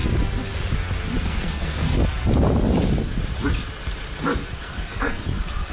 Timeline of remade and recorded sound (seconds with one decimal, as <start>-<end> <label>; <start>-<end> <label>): 0.0-1.2 recorded; 1.2-2.0 remade; 2.0-4.5 recorded; 4.5-5.7 remade